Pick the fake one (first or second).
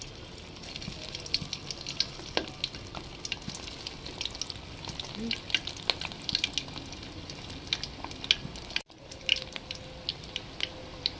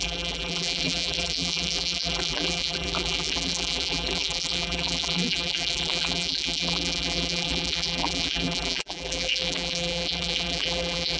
second